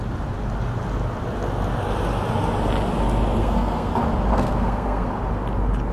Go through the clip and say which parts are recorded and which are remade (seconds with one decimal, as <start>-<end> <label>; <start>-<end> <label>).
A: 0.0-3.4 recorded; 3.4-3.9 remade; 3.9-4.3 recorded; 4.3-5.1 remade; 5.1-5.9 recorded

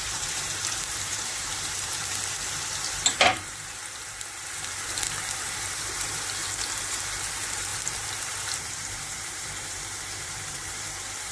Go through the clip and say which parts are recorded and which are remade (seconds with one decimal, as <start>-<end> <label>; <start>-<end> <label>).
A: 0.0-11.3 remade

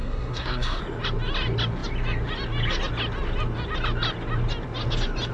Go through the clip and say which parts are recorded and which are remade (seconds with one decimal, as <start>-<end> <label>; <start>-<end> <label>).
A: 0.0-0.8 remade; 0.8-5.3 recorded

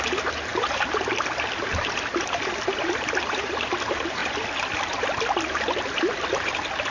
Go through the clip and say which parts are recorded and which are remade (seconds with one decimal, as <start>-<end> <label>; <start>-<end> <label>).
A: 0.0-6.9 remade

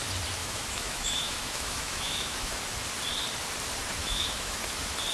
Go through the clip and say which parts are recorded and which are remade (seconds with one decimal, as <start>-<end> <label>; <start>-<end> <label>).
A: 0.0-0.4 recorded; 0.4-2.6 remade; 2.6-4.0 recorded; 4.0-4.6 remade; 4.6-5.1 recorded

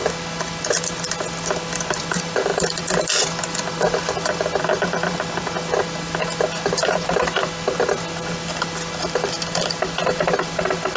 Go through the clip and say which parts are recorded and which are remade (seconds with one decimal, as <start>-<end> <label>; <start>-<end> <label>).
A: 0.0-11.0 recorded

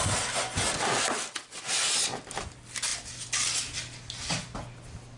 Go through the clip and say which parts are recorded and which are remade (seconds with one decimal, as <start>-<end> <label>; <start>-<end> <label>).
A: 0.0-5.2 recorded